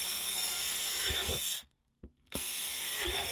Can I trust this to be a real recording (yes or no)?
no